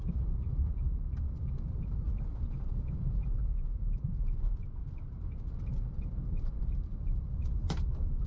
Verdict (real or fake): fake